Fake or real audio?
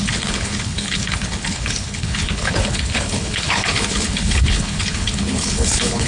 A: fake